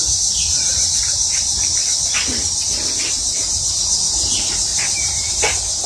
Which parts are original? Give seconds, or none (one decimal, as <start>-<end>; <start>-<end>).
0.0-0.7; 1.5-3.2; 3.7-4.7; 5.3-5.9